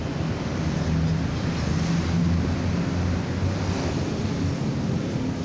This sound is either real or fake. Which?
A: real